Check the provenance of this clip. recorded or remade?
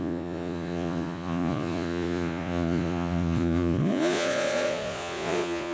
remade